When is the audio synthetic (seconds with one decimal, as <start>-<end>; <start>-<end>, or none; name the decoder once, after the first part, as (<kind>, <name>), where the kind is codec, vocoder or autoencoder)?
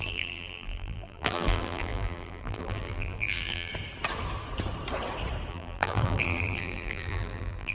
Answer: 0.0-3.7 (vocoder, BigVGAN v2); 5.5-7.7